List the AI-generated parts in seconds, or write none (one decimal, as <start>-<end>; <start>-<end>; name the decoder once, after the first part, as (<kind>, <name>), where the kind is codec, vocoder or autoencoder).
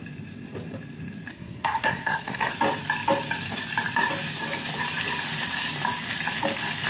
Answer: 1.3-2.5 (codec, SNAC)